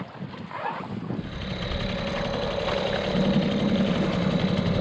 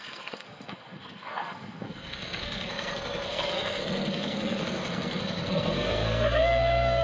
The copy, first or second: second